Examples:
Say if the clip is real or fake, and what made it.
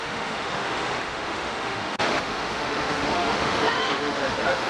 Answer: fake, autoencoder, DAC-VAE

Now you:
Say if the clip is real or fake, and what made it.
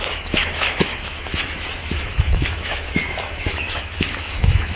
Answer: fake, autoencoder, DAC-VAE